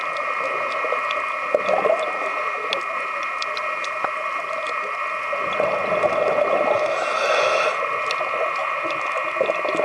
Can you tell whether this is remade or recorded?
recorded